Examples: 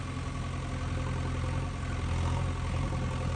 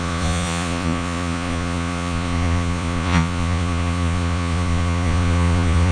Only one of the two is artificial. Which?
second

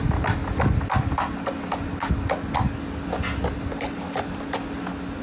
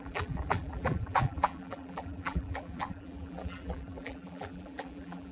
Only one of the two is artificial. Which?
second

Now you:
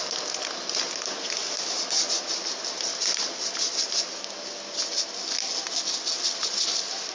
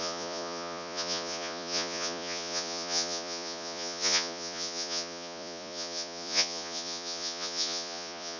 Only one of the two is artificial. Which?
second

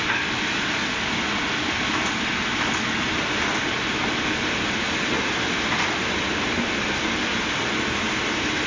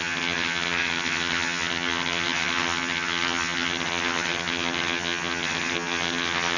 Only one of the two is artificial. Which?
second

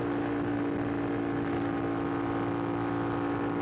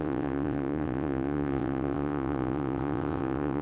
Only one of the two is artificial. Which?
second